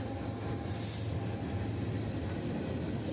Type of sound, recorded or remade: recorded